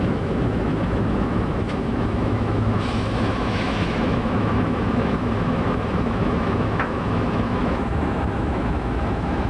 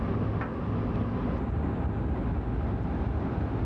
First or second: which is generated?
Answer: first